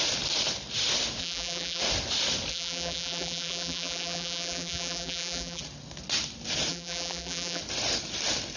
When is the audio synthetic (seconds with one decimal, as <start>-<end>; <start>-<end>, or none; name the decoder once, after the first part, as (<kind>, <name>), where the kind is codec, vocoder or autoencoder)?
1.2-1.8 (vocoder, BigVGAN v2); 2.5-5.6; 6.7-7.6